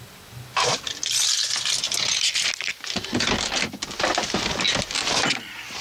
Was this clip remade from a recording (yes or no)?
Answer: no